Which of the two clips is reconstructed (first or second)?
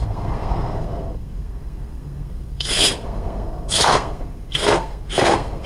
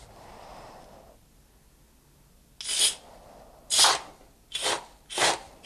first